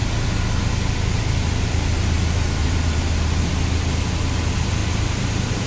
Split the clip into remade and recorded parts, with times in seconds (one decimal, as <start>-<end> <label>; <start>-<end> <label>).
0.0-2.6 recorded; 2.6-3.5 remade; 3.5-4.8 recorded; 4.8-5.7 remade